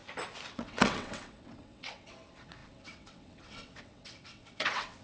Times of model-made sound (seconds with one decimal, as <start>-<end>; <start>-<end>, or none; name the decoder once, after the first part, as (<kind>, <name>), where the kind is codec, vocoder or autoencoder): 0.5-5.0 (vocoder, WaveNeXt)